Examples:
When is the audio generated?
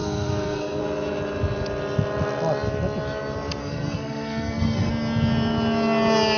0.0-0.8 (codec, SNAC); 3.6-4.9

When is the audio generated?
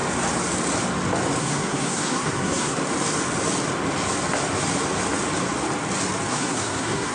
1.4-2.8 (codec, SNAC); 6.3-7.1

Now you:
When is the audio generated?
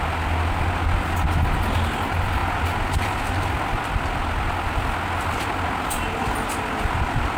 none